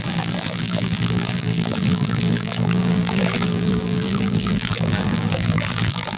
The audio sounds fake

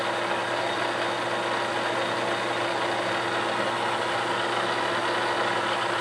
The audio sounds real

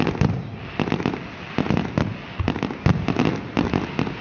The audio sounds real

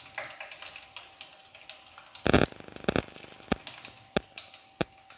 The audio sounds real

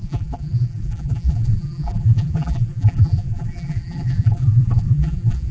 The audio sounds fake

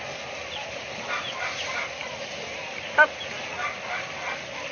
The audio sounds real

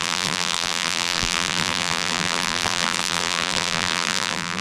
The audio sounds fake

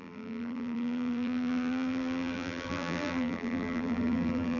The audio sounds fake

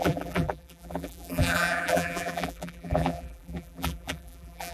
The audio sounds fake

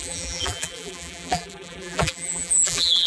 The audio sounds fake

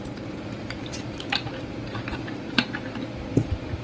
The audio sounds fake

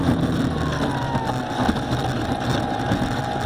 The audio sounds real